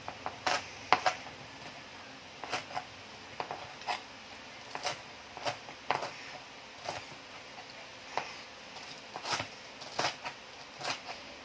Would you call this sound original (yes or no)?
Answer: yes